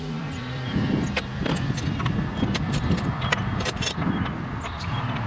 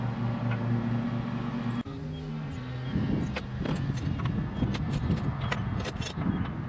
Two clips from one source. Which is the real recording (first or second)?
second